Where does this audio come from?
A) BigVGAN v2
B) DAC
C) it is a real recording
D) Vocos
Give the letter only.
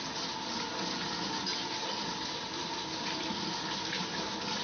C